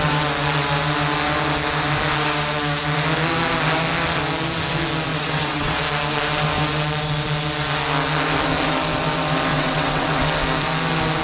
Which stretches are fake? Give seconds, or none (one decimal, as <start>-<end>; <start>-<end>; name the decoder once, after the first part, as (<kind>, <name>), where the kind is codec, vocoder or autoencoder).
5.1-5.8 (vocoder, WaveNeXt); 9.5-10.2